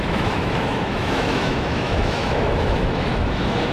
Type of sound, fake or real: fake